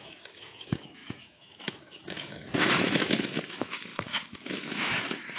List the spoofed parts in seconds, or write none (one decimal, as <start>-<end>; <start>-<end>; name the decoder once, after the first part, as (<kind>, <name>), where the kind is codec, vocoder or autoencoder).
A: 0.0-5.4 (autoencoder, DAC-VAE)